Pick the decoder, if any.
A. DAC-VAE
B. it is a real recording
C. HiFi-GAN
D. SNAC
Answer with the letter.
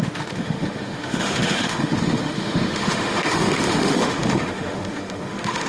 A